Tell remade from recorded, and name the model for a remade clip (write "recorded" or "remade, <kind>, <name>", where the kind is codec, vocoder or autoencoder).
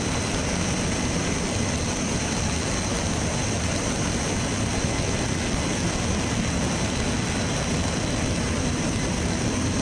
recorded